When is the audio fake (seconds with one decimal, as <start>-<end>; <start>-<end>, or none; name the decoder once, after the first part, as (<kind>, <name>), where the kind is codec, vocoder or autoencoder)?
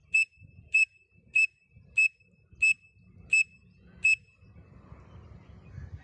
0.0-1.7 (vocoder, BigVGAN v2)